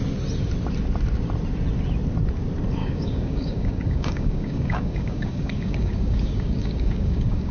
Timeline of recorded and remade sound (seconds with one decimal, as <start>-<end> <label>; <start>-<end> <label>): 0.0-2.8 recorded; 2.8-7.5 remade